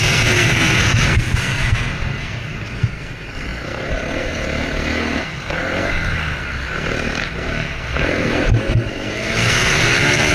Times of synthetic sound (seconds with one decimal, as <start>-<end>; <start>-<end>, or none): 0.0-10.3